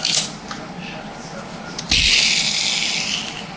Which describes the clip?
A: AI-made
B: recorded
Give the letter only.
B